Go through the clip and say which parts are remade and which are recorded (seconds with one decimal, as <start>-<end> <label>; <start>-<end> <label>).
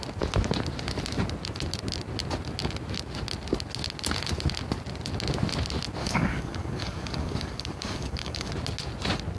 0.0-6.0 recorded; 6.0-8.5 remade; 8.5-9.4 recorded